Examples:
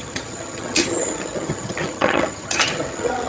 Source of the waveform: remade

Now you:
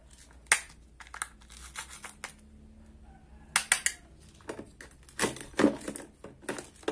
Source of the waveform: recorded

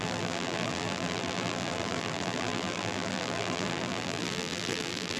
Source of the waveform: remade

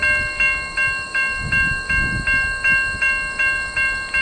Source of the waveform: recorded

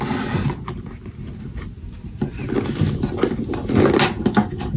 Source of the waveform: recorded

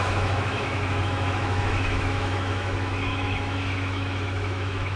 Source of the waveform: remade